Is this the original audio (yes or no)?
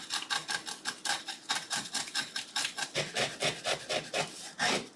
yes